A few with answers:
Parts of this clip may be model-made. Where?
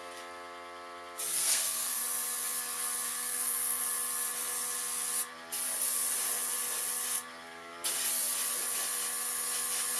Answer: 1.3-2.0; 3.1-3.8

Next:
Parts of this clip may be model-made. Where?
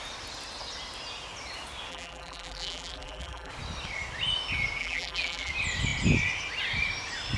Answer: 1.9-3.5; 4.8-5.5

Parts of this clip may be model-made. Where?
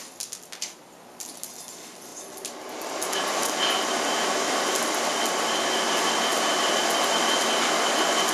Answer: 6.3-7.6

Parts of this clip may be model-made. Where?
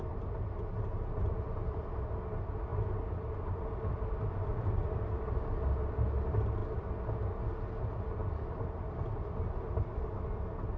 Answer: 2.7-5.9; 8.2-9.0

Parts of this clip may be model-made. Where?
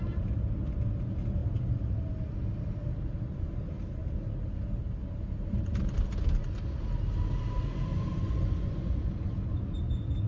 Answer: 7.9-9.1